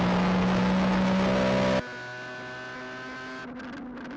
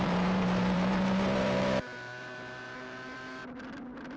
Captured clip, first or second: first